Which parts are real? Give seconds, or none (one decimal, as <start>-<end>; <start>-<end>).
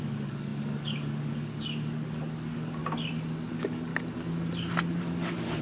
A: 2.8-3.5; 3.9-5.0